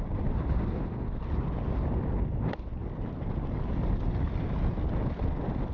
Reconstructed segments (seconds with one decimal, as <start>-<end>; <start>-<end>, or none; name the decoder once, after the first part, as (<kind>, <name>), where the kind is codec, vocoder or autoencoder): none